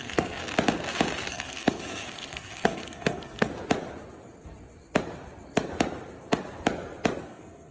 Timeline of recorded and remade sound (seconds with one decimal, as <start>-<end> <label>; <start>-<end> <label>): 0.0-0.4 remade; 0.4-1.3 recorded; 1.3-3.5 remade; 3.5-7.2 recorded; 7.2-7.7 remade